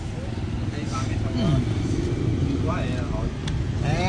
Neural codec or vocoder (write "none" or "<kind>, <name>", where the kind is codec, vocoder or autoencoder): none